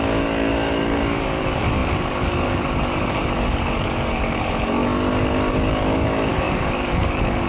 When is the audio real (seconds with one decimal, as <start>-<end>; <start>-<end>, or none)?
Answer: none